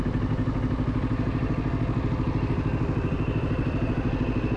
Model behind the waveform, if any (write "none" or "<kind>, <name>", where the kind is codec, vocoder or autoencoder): none